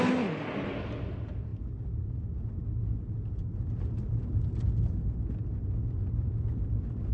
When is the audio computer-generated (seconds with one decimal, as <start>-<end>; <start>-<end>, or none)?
none